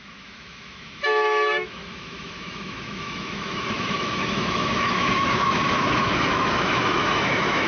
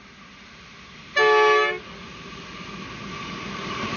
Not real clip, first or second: first